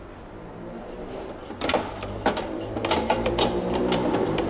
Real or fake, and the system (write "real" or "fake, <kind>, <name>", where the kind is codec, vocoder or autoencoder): fake, vocoder, BigVGAN v2